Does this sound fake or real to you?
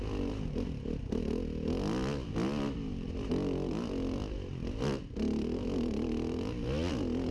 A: real